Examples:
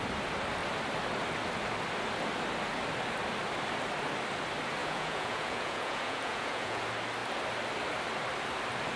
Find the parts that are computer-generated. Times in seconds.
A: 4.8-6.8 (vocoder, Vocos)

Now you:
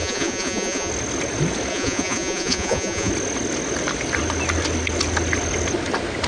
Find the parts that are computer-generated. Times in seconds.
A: 0.0-0.9 (vocoder, Vocos); 1.7-3.1

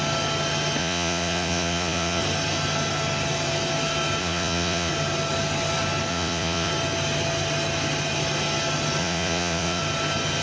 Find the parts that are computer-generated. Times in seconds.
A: 0.8-2.2 (vocoder, Vocos); 4.2-4.9; 6.1-6.7; 9.0-9.8

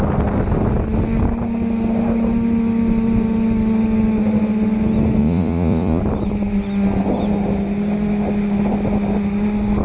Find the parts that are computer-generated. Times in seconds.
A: 5.2-6.0 (vocoder, Vocos)